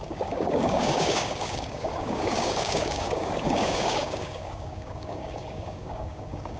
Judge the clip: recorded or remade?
remade